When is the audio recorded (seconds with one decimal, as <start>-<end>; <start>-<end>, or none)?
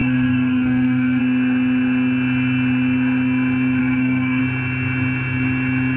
1.2-3.8; 4.4-6.0